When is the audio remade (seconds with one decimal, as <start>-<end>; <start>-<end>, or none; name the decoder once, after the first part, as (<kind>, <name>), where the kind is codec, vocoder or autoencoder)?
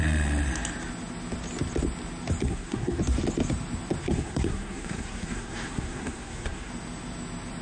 2.4-3.0 (codec, SNAC); 4.0-6.7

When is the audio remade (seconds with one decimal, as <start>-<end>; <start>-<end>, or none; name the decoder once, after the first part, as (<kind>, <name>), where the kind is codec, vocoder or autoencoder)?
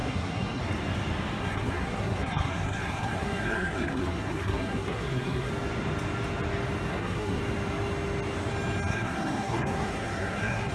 0.0-0.6 (codec, SNAC); 1.4-5.5; 6.9-7.4; 8.9-10.7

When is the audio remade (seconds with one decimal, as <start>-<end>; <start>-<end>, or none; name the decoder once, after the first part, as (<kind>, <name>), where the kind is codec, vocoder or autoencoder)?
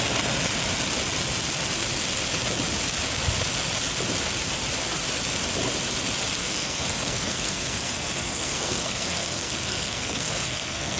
6.4-11.0 (codec, SNAC)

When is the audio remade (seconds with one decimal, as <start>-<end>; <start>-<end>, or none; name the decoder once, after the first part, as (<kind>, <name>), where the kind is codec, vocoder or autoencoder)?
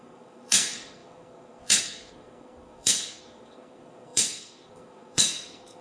0.0-5.8 (codec, SNAC)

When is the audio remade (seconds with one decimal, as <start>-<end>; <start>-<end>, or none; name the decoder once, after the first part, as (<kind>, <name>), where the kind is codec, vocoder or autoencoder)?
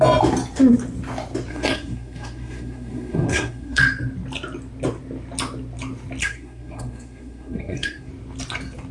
1.5-3.8 (codec, SNAC); 6.2-8.1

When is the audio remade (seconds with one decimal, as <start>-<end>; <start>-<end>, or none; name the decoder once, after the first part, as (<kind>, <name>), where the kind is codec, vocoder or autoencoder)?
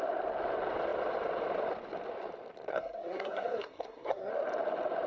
2.7-4.3 (codec, SNAC)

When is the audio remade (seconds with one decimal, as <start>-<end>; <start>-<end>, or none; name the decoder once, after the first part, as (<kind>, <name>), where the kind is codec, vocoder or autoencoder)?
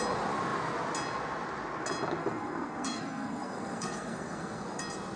2.2-4.8 (codec, SNAC)